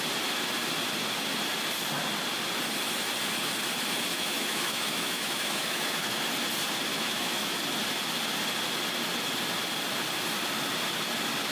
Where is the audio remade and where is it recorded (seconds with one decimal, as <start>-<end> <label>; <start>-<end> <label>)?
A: 0.0-4.1 recorded; 4.1-6.2 remade; 6.2-6.9 recorded; 6.9-7.6 remade; 7.6-11.5 recorded